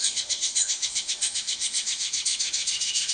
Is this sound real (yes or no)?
no